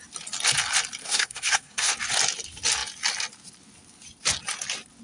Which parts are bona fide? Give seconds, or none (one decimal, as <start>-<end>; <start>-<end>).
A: 0.0-1.0; 1.9-5.0